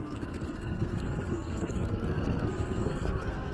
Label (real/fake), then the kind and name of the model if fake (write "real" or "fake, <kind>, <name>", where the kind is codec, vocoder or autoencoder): fake, codec, SNAC